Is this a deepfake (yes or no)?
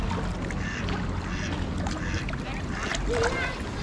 no